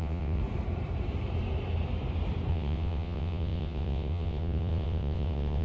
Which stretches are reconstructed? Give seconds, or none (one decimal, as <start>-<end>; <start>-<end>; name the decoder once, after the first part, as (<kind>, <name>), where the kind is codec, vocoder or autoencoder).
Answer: 0.0-0.4 (vocoder, WaveNeXt); 2.5-5.6